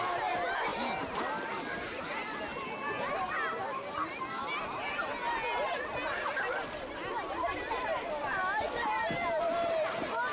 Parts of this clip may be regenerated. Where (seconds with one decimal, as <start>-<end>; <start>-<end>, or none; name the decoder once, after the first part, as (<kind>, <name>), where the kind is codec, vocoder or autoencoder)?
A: none